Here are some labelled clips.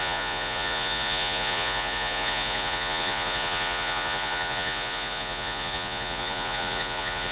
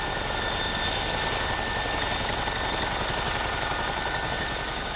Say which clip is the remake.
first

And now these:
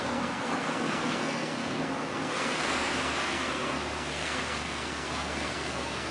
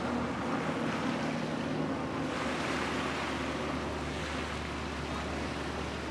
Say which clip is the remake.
first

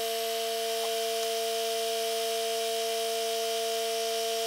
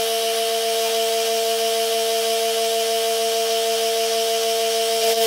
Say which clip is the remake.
second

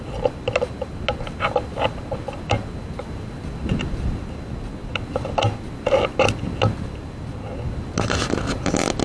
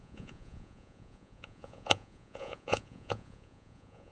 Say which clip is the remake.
second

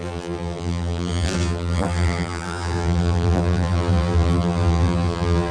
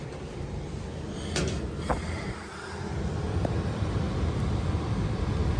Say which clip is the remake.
first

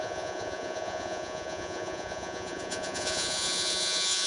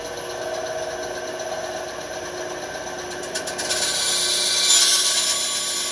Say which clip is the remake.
first